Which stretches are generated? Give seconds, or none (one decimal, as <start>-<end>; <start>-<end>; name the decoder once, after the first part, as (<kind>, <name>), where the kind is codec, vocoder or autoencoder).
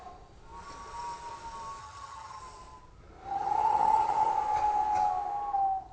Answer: 1.8-2.4 (vocoder, HiFi-GAN); 3.3-4.3